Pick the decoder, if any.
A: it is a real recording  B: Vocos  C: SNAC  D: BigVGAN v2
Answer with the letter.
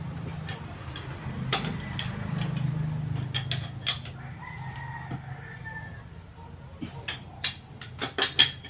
A